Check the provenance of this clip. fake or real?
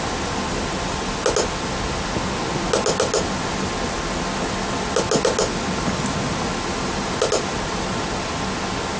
real